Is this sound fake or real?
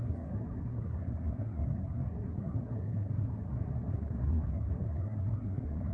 fake